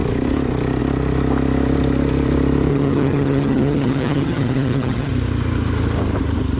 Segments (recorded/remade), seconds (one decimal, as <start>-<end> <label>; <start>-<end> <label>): 0.0-2.7 recorded; 2.7-5.1 remade; 5.1-6.6 recorded